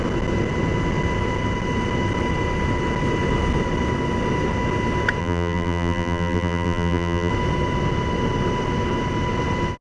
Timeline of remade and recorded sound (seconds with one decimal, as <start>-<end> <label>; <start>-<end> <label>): 0.0-5.2 recorded; 5.2-7.3 remade; 7.3-9.8 recorded